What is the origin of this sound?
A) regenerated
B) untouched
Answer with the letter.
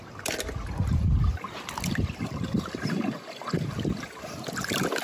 B